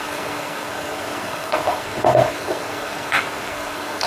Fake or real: fake